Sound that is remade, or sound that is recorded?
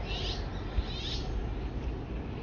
recorded